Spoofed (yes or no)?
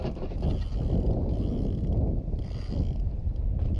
no